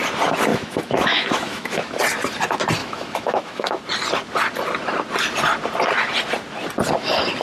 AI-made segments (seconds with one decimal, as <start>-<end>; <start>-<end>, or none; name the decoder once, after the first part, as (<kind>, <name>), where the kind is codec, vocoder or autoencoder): 0.5-2.0 (autoencoder, DAC-VAE); 2.8-3.8